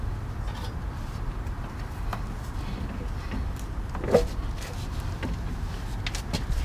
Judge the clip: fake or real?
real